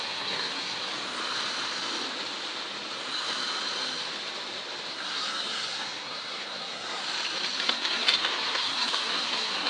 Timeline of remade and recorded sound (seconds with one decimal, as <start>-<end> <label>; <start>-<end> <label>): 0.0-0.9 remade; 0.9-4.9 recorded; 4.9-7.0 remade; 7.0-7.6 recorded; 7.6-9.7 remade